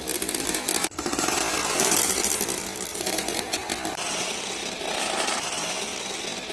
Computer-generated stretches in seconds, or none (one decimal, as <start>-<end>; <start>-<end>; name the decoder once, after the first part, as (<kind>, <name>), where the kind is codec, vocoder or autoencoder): 0.8-1.4 (vocoder, Vocos); 2.9-3.7

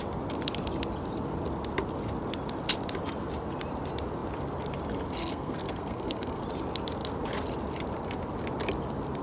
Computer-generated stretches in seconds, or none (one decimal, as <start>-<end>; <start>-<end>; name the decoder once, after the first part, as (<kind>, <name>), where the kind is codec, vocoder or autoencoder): 5.2-6.4 (codec, SNAC)